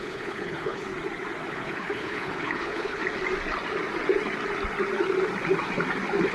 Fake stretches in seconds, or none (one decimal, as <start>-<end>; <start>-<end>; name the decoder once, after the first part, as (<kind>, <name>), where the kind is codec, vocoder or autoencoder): 0.0-0.9 (codec, HILCodec); 1.5-3.0